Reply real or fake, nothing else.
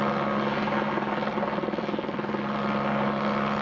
real